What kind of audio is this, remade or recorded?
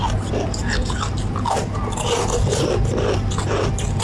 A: recorded